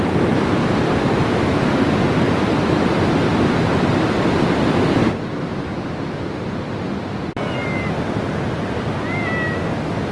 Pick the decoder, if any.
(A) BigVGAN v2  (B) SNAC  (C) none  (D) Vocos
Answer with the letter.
C